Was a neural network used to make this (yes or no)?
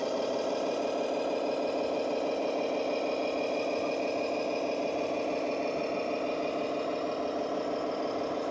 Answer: yes